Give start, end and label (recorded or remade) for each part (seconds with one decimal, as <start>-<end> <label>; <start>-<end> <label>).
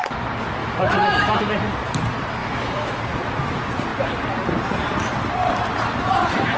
0.0-0.6 recorded; 0.6-1.4 remade; 1.4-2.4 recorded; 2.4-3.0 remade; 3.0-6.6 recorded